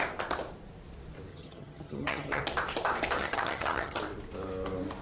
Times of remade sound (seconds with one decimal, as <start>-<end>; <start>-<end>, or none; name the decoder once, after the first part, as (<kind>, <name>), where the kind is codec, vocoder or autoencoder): 1.3-2.4 (vocoder, HiFi-GAN); 3.2-4.0